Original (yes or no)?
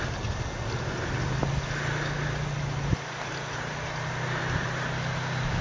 yes